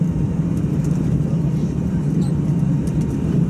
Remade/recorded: remade